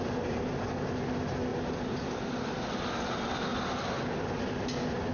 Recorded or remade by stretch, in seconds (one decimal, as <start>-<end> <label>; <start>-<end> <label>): 0.0-1.5 recorded; 1.5-2.7 remade; 2.7-3.5 recorded; 3.5-4.4 remade; 4.4-5.1 recorded